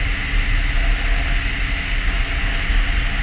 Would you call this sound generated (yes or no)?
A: no